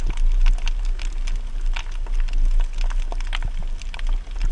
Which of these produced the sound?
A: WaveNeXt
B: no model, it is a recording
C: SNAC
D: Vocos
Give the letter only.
B